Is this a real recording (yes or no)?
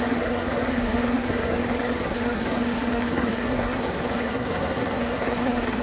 no